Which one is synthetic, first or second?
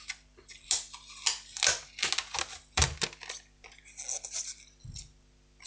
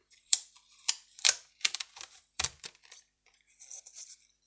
second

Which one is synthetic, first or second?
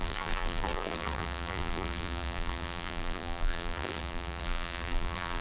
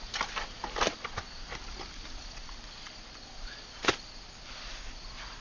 first